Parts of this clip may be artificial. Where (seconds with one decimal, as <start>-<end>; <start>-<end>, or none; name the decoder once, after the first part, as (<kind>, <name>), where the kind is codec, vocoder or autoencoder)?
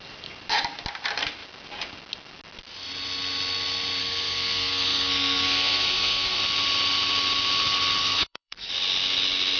4.0-6.4 (codec, SNAC); 8.0-8.7